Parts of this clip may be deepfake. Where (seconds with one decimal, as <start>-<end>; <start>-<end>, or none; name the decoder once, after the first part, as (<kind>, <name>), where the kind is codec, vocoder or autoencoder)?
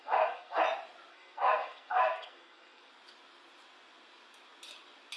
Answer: 0.0-0.6 (codec, SNAC); 1.1-2.9